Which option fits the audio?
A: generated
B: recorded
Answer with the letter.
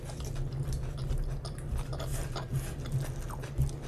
B